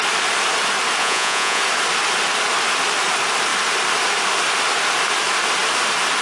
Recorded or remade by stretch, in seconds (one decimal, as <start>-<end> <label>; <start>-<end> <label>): 0.0-1.0 recorded; 1.0-1.6 remade; 1.6-6.2 recorded